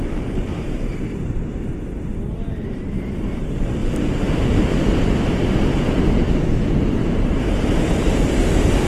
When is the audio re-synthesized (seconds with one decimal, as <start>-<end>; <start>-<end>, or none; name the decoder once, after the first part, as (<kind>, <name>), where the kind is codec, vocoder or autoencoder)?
0.5-1.2 (vocoder, BigVGAN v2); 7.0-8.2